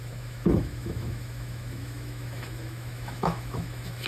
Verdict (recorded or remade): remade